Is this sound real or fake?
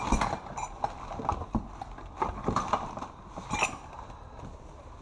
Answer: real